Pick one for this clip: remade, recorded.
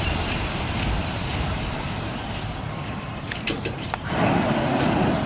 remade